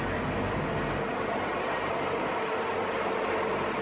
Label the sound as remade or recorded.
recorded